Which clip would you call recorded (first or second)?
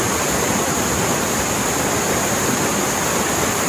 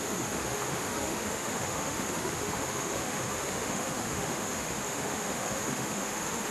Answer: first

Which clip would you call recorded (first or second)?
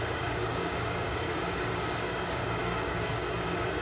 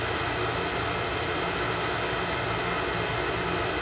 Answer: second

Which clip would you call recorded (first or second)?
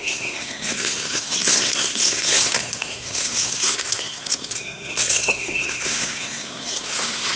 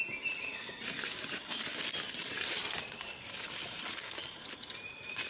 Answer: second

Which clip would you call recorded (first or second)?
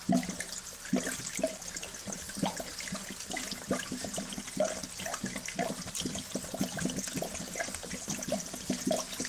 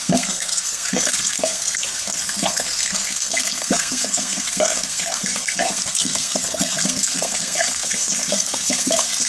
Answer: first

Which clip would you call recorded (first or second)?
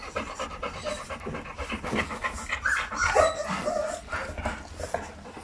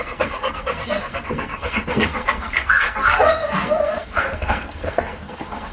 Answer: first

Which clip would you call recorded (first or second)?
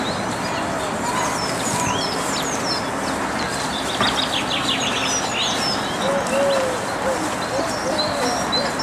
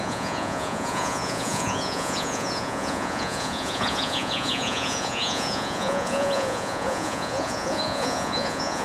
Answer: first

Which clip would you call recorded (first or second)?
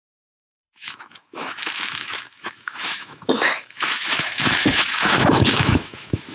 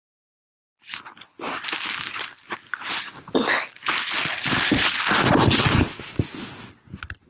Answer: second